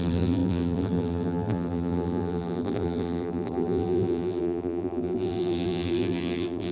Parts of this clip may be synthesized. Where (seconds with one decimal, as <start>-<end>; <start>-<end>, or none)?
0.0-6.7